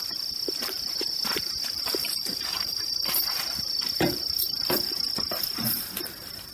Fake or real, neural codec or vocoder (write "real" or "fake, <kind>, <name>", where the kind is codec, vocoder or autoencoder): fake, vocoder, BigVGAN v2